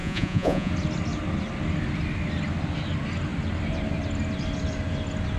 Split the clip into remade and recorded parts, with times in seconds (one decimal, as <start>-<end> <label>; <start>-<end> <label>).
0.0-0.7 remade; 0.7-5.4 recorded